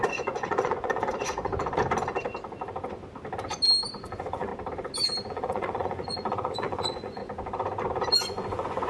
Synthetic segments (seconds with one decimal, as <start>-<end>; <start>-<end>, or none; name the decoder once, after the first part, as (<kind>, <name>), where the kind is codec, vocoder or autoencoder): 0.0-1.5 (vocoder, Vocos); 4.0-4.5; 5.3-7.2; 8.1-8.9